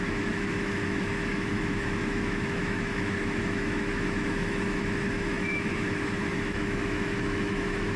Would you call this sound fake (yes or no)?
yes